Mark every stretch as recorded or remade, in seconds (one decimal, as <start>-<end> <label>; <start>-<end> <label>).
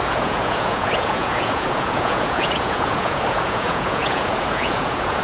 0.0-5.2 remade